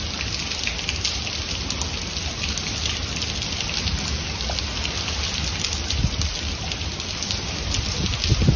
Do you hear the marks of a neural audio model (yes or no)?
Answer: no